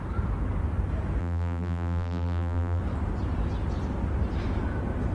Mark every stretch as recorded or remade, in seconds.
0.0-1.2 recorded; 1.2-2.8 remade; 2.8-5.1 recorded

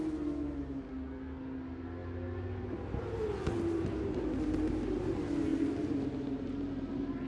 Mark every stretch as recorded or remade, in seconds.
0.0-7.3 recorded